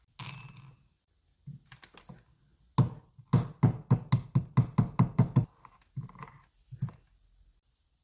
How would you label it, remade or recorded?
recorded